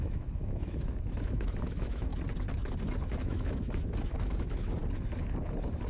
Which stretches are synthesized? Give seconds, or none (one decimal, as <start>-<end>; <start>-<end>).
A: 0.0-2.1; 3.2-4.8